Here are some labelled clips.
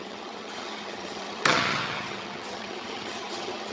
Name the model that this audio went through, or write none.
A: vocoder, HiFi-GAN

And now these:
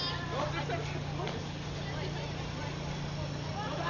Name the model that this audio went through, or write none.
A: none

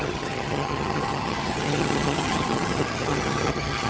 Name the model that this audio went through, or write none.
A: vocoder, HiFi-GAN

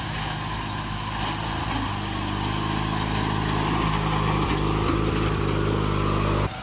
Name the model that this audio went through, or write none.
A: none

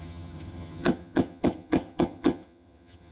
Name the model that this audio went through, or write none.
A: vocoder, HiFi-GAN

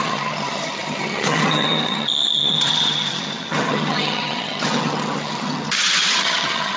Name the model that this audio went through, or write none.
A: vocoder, HiFi-GAN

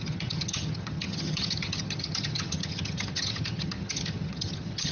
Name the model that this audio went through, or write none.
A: vocoder, HiFi-GAN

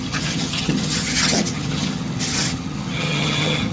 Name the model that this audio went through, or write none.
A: vocoder, HiFi-GAN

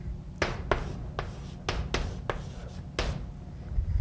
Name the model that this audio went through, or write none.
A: none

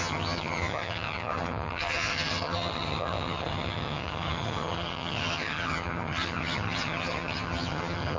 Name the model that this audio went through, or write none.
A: vocoder, HiFi-GAN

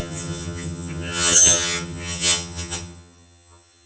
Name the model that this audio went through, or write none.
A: vocoder, HiFi-GAN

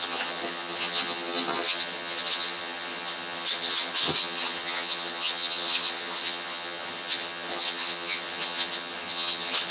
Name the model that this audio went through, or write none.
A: vocoder, HiFi-GAN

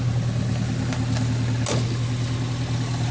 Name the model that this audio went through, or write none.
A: none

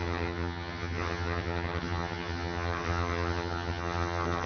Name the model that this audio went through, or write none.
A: vocoder, HiFi-GAN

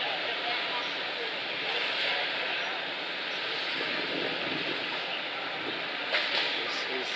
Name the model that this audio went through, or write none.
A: none